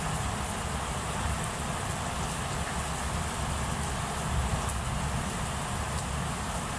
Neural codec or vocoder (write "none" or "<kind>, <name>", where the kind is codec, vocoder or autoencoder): none